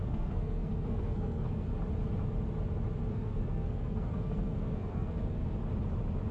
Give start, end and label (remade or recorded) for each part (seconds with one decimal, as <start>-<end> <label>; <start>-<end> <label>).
0.0-1.7 remade; 1.7-3.1 recorded; 3.1-5.4 remade; 5.4-6.3 recorded